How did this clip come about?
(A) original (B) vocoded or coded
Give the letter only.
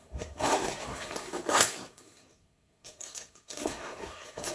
B